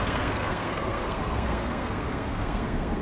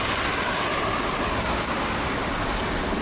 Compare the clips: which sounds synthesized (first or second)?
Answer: first